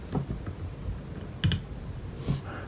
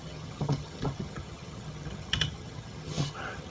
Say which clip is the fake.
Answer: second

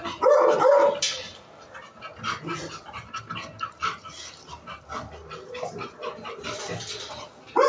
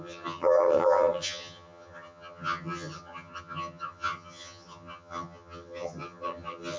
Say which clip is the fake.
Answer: second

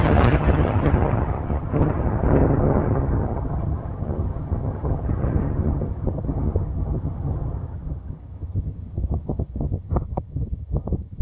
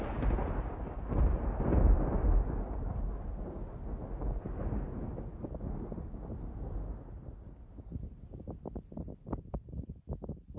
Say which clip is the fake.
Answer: first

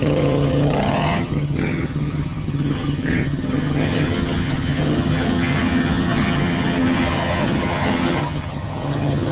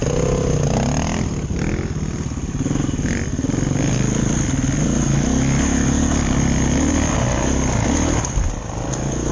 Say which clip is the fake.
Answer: first